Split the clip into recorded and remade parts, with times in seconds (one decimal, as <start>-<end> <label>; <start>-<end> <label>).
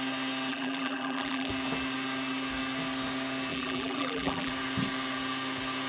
0.0-0.5 recorded; 0.5-1.5 remade; 1.5-3.5 recorded; 3.5-4.5 remade; 4.5-5.9 recorded